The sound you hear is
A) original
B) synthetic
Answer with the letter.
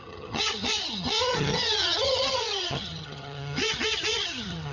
B